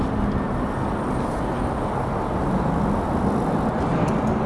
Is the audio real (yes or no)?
yes